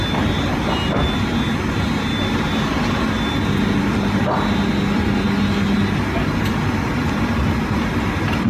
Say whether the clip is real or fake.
real